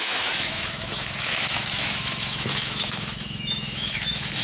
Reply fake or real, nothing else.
fake